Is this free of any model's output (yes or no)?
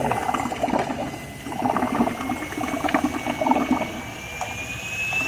yes